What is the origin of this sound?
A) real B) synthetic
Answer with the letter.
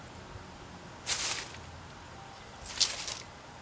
A